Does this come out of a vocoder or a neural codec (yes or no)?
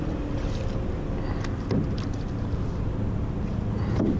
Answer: no